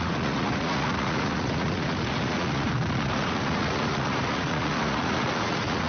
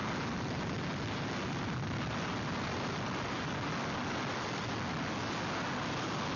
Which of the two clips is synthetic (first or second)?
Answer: first